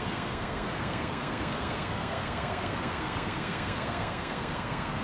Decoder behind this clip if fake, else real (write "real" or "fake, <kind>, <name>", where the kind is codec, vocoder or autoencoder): fake, codec, SNAC